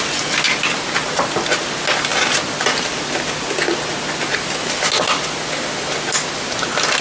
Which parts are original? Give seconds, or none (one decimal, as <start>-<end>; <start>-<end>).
0.0-7.0